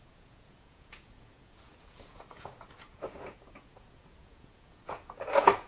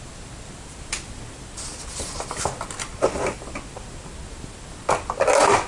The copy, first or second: first